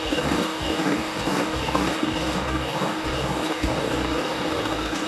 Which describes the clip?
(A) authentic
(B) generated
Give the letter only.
B